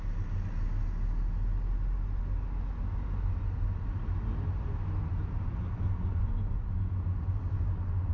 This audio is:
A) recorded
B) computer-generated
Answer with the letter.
A